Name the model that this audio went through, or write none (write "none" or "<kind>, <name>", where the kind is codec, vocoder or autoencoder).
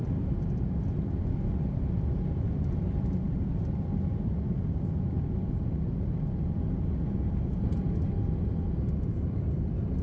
vocoder, BigVGAN v2